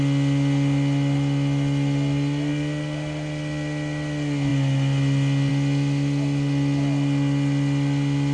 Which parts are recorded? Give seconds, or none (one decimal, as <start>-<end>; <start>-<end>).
0.0-8.3